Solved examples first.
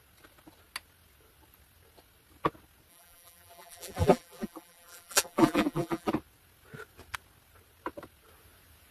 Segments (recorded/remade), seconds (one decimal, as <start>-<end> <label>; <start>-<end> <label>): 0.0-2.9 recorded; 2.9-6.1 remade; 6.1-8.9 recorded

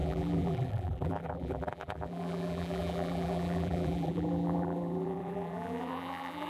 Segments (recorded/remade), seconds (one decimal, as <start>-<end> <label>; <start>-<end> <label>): 0.0-6.5 remade

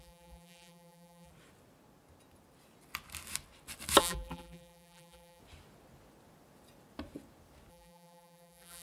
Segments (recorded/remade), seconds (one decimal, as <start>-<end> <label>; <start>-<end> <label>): 0.0-1.3 remade; 1.3-4.0 recorded; 4.0-5.4 remade; 5.4-7.7 recorded; 7.7-8.8 remade